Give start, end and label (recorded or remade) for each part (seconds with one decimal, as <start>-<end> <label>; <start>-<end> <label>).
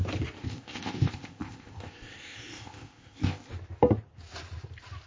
0.0-0.4 recorded; 0.4-3.5 remade; 3.5-5.1 recorded